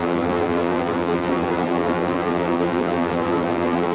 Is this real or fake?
fake